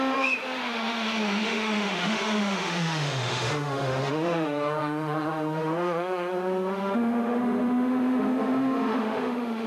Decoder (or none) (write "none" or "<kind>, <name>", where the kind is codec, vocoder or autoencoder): autoencoder, DAC-VAE